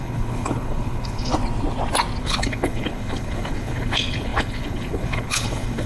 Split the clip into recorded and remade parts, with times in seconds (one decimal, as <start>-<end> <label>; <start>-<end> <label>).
0.0-1.3 remade; 1.3-2.2 recorded; 2.2-5.9 remade